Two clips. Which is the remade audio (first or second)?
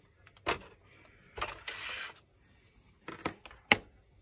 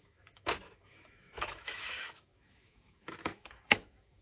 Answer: second